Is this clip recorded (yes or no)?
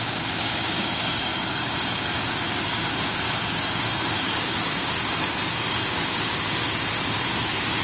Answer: no